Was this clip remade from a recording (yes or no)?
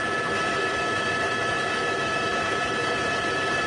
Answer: yes